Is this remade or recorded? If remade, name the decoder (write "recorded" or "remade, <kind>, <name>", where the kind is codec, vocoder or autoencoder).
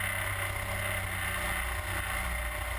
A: recorded